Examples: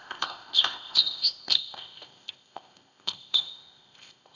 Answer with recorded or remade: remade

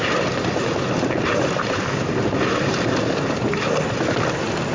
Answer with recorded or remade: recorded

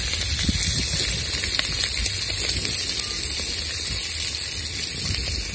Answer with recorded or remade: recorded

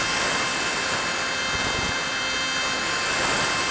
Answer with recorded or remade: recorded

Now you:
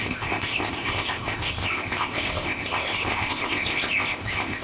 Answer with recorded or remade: remade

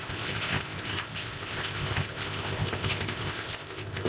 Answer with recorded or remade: remade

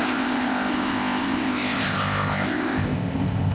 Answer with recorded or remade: remade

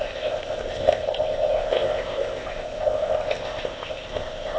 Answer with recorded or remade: remade